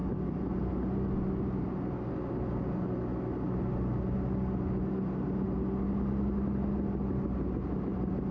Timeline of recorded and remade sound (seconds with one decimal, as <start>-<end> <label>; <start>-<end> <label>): 0.0-8.3 recorded